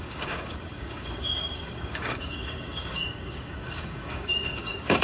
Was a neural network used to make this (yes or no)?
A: yes